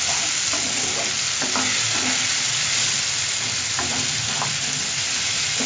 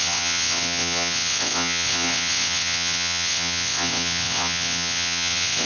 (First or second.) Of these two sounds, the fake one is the second